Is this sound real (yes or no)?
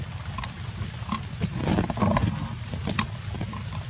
yes